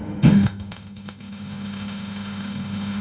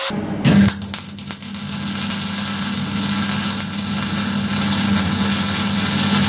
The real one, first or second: second